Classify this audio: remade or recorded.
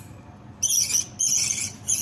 recorded